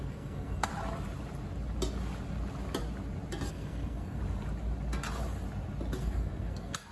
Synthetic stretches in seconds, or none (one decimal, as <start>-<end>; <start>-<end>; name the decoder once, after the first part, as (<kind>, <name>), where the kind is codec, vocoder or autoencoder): 0.0-0.7 (codec, SNAC); 3.5-4.2; 6.0-6.9